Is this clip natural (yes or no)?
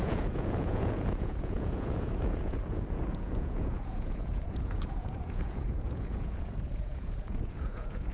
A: no